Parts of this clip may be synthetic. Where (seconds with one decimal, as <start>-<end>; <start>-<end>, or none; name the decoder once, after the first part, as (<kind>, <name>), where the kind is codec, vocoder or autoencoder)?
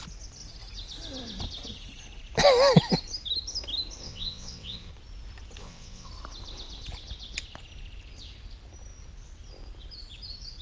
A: 4.0-4.9 (vocoder, WaveNeXt); 5.6-6.1